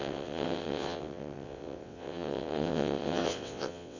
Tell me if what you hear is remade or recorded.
remade